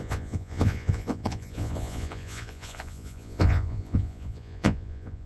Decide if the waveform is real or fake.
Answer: fake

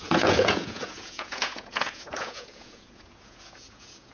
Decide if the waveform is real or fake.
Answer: fake